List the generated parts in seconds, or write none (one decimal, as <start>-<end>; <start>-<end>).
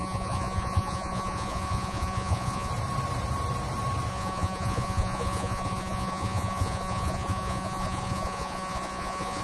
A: 0.0-2.7; 4.1-9.4